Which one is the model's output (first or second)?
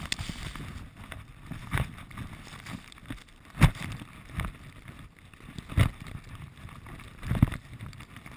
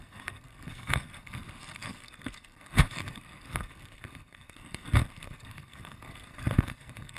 second